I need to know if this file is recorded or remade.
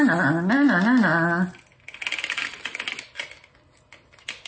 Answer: recorded